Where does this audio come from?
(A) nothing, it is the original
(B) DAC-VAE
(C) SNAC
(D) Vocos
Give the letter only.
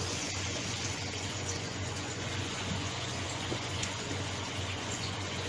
D